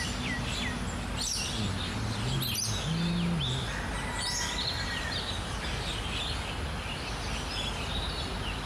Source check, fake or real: real